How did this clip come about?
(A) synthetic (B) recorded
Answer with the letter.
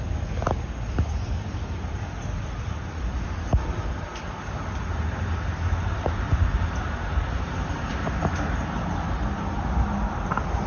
B